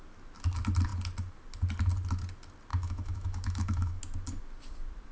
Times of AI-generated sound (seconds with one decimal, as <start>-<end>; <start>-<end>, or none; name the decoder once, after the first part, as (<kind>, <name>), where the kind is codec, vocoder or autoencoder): 2.7-4.0 (autoencoder, DAC-VAE)